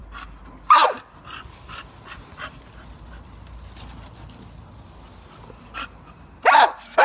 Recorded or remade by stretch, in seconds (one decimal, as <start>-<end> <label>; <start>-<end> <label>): 0.0-7.0 recorded